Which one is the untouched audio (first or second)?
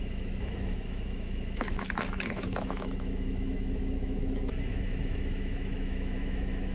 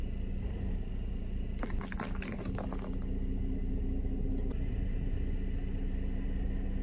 second